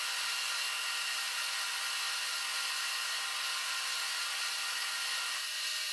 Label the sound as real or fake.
real